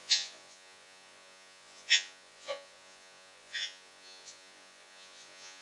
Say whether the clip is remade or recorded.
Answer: remade